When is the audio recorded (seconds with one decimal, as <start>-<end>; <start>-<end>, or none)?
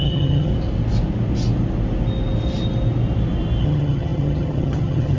0.5-3.6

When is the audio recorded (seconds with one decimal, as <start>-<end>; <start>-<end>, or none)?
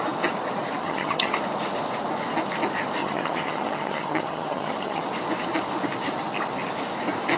0.0-0.8; 1.3-3.0; 5.0-7.4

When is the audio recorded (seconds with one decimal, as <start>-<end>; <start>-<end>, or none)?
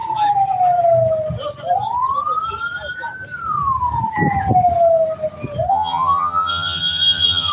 0.0-5.7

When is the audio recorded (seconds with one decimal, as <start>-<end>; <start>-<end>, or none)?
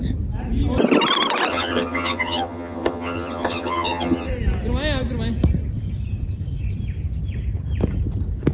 0.0-1.5; 4.3-8.5